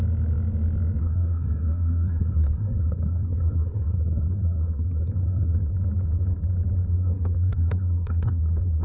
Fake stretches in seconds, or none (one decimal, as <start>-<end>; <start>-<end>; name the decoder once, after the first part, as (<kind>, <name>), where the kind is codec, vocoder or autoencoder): 1.0-5.7 (codec, SNAC); 6.9-8.4